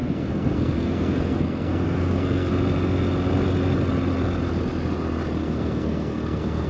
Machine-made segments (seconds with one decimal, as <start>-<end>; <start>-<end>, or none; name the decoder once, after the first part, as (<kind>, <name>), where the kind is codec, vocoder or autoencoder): 0.0-2.5 (codec, SNAC); 5.4-6.7